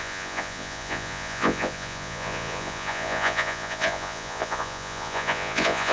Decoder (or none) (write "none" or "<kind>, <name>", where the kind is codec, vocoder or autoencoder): vocoder, Vocos